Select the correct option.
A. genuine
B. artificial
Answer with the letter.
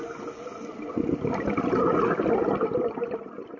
A